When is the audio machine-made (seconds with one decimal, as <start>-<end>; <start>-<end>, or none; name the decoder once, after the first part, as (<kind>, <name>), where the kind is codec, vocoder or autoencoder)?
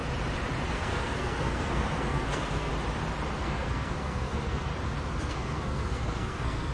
0.7-2.7 (codec, SNAC); 3.4-4.7; 5.2-6.7